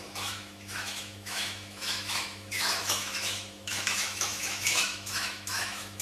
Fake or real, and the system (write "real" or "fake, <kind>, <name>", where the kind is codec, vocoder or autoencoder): fake, autoencoder, DAC-VAE